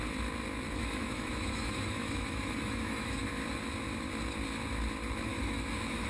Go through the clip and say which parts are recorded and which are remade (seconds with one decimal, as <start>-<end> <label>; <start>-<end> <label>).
0.0-0.8 recorded; 0.8-3.2 remade; 3.2-5.3 recorded; 5.3-6.1 remade